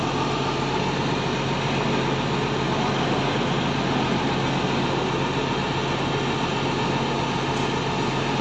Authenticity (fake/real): real